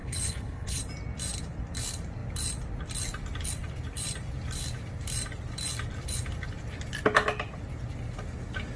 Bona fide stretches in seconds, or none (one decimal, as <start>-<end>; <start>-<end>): 0.8-8.8